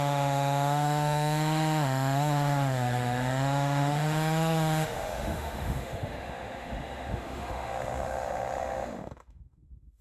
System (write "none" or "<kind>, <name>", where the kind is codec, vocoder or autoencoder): autoencoder, DAC-VAE